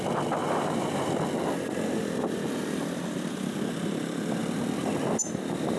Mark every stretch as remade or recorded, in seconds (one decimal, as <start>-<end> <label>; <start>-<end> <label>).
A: 0.0-0.4 recorded; 0.4-1.1 remade; 1.1-5.8 recorded